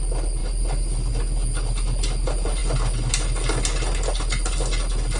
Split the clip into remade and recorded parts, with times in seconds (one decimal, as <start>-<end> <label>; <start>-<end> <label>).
0.0-5.2 recorded